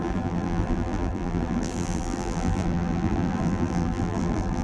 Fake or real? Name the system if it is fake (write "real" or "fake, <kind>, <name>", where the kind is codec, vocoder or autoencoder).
fake, vocoder, BigVGAN v2